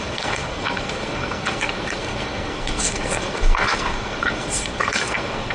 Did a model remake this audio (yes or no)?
yes